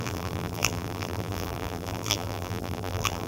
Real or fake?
fake